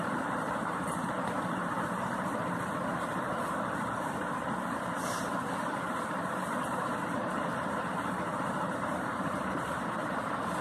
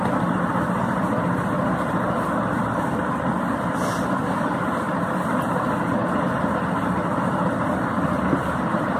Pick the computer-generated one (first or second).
first